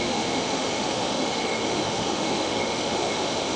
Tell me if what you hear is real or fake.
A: fake